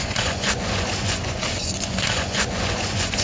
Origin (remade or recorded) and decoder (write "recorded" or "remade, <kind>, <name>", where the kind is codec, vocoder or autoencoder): remade, vocoder, Vocos